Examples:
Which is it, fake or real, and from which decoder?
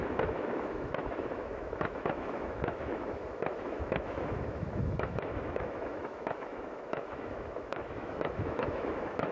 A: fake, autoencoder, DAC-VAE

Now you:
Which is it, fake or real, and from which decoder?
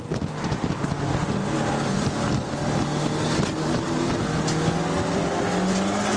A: real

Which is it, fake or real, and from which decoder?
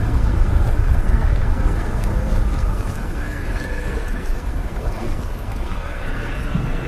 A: fake, codec, SNAC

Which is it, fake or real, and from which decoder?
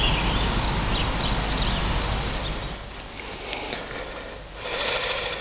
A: real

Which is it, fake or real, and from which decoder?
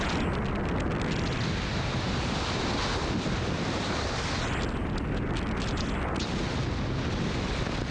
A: real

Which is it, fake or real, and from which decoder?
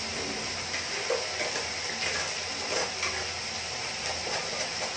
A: real